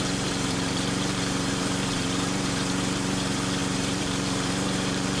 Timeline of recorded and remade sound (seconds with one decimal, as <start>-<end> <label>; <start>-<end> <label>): 0.0-5.2 remade